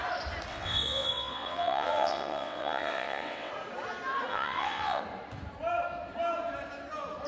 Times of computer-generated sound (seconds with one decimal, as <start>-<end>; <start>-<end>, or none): 0.5-3.5; 4.3-5.0